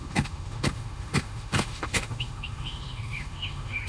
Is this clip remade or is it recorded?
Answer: remade